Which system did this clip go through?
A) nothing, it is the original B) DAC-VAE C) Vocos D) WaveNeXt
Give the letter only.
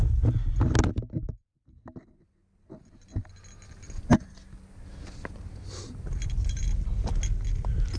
A